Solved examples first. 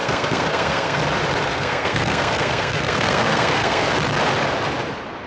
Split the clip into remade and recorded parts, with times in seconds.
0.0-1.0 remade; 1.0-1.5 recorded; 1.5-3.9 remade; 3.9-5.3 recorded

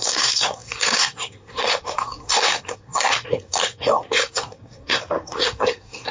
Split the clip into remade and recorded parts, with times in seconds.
0.0-6.1 remade

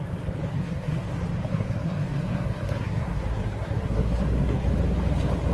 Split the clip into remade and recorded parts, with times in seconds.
0.0-0.5 recorded; 0.5-1.1 remade; 1.1-1.5 recorded; 1.5-4.7 remade; 4.7-5.5 recorded

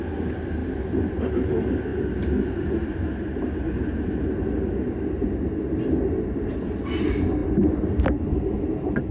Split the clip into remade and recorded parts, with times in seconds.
0.0-9.1 recorded

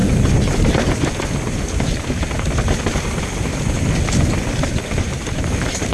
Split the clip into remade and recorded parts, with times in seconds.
0.0-5.9 recorded

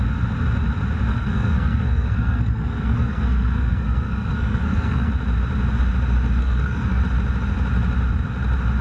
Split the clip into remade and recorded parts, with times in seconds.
0.0-1.1 recorded; 1.1-5.1 remade; 5.1-6.4 recorded; 6.4-7.0 remade; 7.0-8.8 recorded

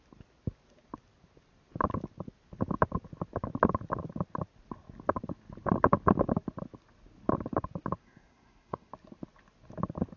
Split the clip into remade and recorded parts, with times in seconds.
0.0-8.0 recorded; 8.0-8.9 remade; 8.9-10.2 recorded